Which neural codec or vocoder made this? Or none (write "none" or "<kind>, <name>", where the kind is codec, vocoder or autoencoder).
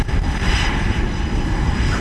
none